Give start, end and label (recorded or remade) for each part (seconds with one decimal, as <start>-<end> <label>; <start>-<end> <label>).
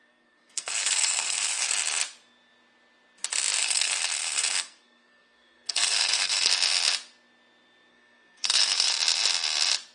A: 0.0-1.7 remade; 1.7-3.6 recorded; 3.6-6.5 remade; 6.5-7.9 recorded; 7.9-8.9 remade; 8.9-9.9 recorded